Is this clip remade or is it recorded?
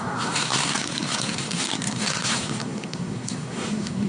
remade